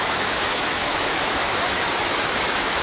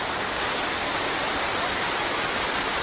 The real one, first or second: second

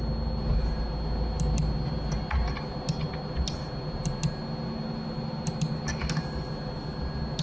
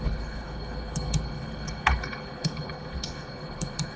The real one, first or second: first